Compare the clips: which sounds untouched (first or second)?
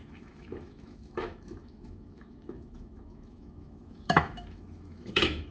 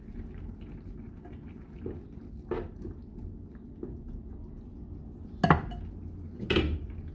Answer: second